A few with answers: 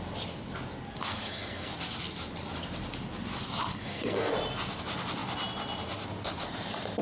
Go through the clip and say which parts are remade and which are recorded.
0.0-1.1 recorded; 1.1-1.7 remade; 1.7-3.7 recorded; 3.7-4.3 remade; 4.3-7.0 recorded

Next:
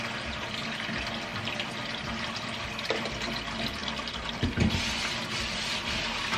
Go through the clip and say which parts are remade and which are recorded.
0.0-6.4 recorded

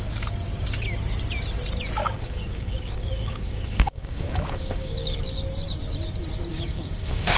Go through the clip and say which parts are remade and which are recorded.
0.0-2.0 recorded; 2.0-5.2 remade; 5.2-6.5 recorded; 6.5-7.4 remade

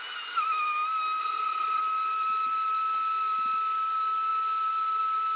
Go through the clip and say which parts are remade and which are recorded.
0.0-1.2 recorded; 1.2-1.8 remade; 1.8-5.4 recorded

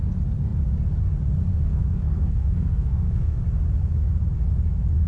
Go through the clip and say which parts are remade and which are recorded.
0.0-1.5 recorded; 1.5-3.4 remade; 3.4-5.1 recorded